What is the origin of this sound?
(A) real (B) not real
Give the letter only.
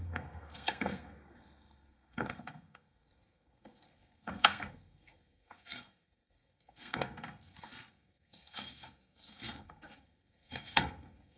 B